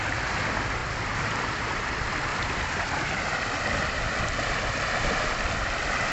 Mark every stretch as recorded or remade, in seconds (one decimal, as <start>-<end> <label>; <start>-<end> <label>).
0.0-0.8 recorded; 0.8-1.8 remade; 1.8-2.3 recorded; 2.3-6.1 remade